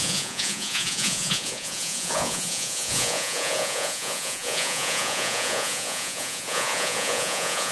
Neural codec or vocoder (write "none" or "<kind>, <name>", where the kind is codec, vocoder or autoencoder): vocoder, Vocos